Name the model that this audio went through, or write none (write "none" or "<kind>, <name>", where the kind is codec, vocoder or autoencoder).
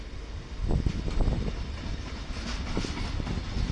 none